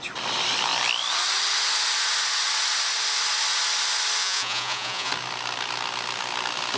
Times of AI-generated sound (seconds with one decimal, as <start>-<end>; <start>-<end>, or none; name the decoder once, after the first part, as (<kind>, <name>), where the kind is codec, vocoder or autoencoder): 4.2-5.1 (vocoder, Vocos)